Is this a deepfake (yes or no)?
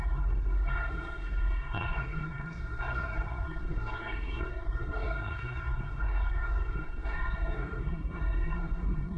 yes